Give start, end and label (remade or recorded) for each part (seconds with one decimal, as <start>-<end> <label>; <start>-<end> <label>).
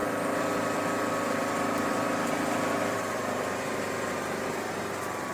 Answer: 0.0-3.2 remade; 3.2-5.3 recorded